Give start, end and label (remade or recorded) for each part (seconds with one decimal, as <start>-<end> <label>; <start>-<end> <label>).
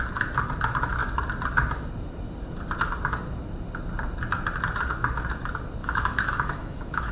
0.0-5.8 recorded; 5.8-7.1 remade